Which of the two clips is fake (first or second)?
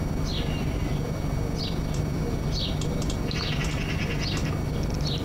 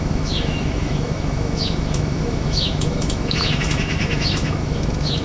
second